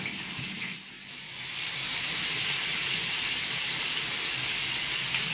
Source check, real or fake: real